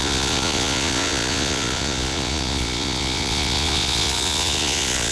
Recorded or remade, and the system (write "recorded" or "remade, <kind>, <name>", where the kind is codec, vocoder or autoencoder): remade, vocoder, Vocos